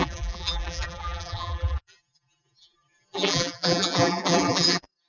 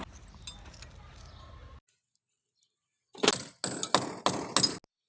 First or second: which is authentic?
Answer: second